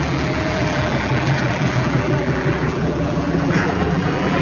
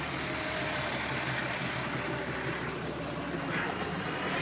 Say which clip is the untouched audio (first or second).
second